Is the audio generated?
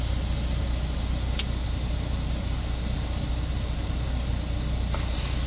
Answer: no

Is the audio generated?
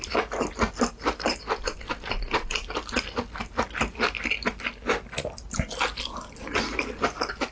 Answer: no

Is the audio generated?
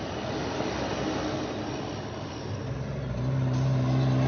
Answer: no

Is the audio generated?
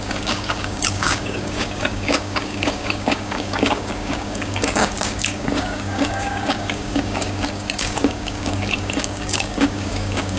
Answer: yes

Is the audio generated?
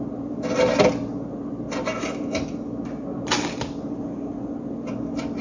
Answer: no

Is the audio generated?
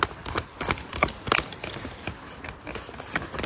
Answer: no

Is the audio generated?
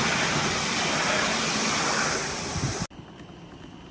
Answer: no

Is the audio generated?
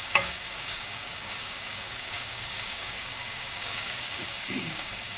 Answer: yes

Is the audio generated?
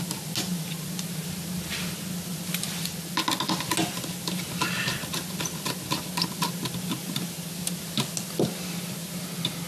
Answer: no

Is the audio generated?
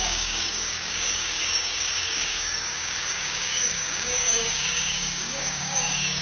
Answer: yes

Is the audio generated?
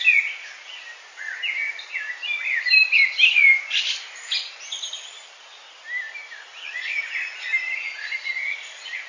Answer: no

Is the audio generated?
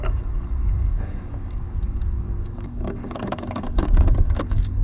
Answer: yes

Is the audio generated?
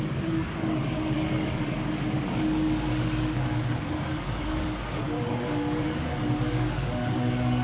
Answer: yes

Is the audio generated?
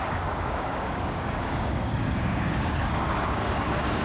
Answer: yes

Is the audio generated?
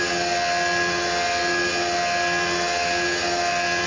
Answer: no